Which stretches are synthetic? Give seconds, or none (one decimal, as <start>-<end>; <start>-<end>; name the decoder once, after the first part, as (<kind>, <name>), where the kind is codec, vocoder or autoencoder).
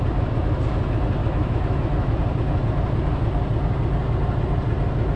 1.2-2.2 (autoencoder, DAC-VAE)